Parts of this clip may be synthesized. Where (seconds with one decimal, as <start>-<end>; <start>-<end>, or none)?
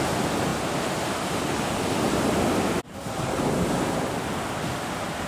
none